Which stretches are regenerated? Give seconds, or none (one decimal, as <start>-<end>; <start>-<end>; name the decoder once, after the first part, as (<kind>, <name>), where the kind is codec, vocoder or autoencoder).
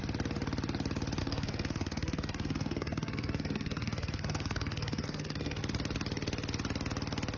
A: 1.2-5.6 (codec, SNAC)